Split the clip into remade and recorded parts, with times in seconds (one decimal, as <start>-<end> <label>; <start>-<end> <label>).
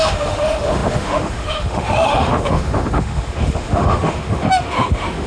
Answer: 0.0-5.3 remade